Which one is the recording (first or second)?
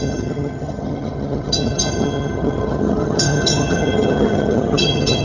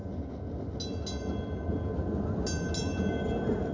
second